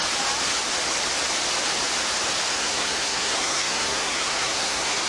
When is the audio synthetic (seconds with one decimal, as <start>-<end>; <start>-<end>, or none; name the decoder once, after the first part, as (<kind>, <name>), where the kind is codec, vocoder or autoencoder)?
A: 2.5-5.1 (codec, SNAC)